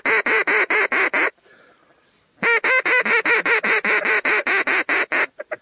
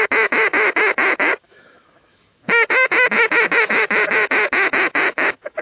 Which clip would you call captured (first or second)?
first